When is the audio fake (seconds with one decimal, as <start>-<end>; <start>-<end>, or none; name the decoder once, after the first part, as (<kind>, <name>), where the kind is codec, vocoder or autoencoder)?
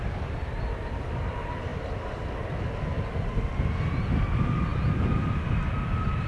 none